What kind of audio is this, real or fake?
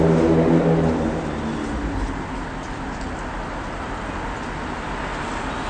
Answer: real